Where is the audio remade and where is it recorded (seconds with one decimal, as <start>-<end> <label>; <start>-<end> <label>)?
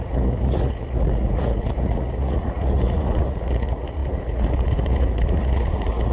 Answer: 0.0-6.1 remade